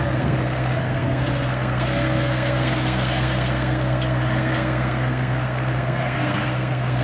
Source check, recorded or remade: remade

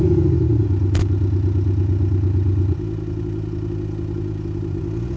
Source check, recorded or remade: recorded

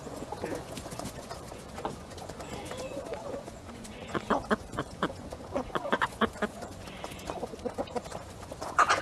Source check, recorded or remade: remade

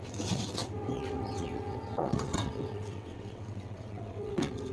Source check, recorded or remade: remade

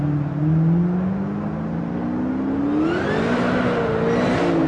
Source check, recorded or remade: recorded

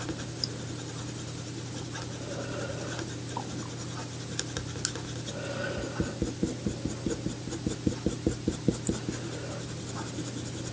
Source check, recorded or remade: recorded